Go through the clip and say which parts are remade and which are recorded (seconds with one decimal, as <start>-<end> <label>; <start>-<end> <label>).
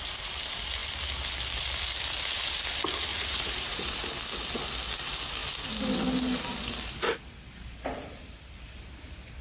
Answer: 0.0-3.1 recorded; 3.1-4.1 remade; 4.1-9.4 recorded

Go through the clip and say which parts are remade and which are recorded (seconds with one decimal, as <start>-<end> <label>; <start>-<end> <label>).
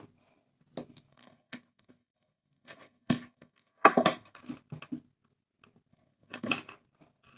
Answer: 0.0-1.1 recorded; 1.1-4.4 remade; 4.4-5.9 recorded; 5.9-6.5 remade; 6.5-7.4 recorded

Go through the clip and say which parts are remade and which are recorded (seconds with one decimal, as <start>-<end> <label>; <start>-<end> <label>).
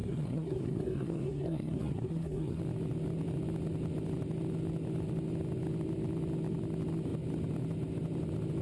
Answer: 0.0-2.6 remade; 2.6-8.6 recorded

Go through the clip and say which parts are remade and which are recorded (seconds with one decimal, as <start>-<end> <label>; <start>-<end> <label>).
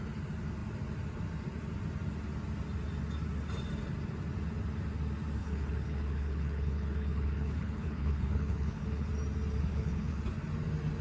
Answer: 0.0-5.4 recorded; 5.4-9.1 remade; 9.1-9.7 recorded; 9.7-10.2 remade; 10.2-11.0 recorded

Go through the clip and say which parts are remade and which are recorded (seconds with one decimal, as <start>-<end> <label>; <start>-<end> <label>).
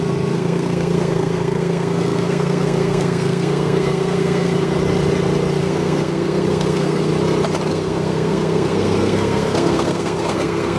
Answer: 0.0-4.7 remade; 4.7-5.6 recorded; 5.6-7.1 remade; 7.1-7.7 recorded; 7.7-10.8 remade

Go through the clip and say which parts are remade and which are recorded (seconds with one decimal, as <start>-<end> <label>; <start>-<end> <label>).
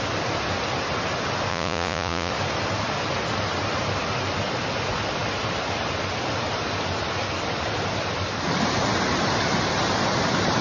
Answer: 0.0-1.5 recorded; 1.5-2.3 remade; 2.3-10.6 recorded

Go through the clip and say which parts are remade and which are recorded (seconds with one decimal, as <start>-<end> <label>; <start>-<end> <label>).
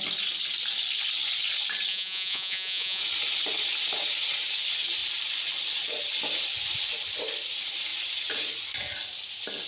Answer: 0.0-1.9 recorded; 1.9-3.0 remade; 3.0-9.7 recorded